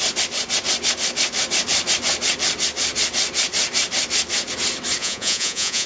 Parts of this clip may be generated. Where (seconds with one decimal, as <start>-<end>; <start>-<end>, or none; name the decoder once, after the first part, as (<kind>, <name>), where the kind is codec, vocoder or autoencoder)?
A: 5.0-5.9 (vocoder, Vocos)